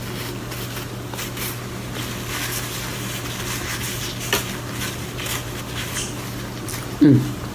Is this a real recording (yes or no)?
yes